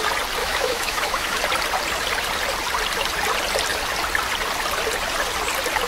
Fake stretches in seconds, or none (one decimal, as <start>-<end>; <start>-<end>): 0.4-1.4